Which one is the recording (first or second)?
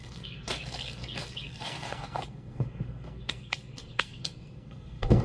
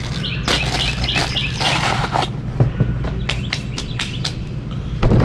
second